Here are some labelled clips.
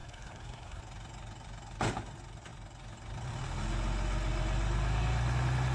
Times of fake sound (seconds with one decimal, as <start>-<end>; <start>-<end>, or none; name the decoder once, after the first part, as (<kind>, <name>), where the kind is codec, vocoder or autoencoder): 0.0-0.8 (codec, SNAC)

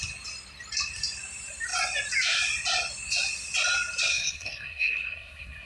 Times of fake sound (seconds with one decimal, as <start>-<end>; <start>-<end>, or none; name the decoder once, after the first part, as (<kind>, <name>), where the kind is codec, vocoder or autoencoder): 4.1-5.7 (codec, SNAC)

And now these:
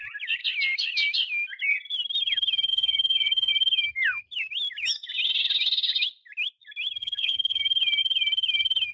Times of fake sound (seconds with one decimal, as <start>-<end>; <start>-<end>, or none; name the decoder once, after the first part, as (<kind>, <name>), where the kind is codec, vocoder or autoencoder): 2.7-3.5 (codec, SNAC); 7.0-7.6

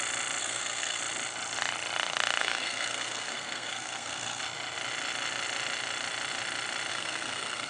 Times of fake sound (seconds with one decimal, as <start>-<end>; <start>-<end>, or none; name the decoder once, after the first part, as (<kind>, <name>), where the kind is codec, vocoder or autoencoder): 0.4-1.0 (codec, SNAC); 2.4-4.4; 6.9-7.7